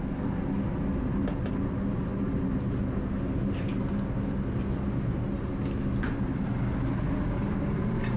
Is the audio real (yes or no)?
yes